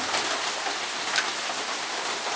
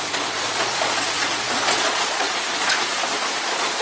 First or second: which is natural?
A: first